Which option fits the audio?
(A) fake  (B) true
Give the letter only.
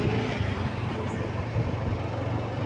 B